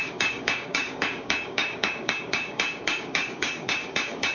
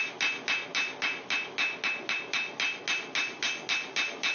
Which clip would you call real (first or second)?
second